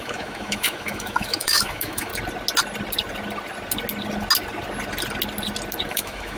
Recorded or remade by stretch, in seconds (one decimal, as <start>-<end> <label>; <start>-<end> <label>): 0.0-2.1 remade; 2.1-5.9 recorded; 5.9-6.4 remade